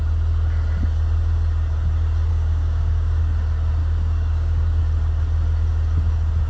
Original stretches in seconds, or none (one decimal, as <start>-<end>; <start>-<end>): 0.0-2.3; 3.2-3.8; 4.8-6.5